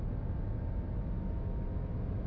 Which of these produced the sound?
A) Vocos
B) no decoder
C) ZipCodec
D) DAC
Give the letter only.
B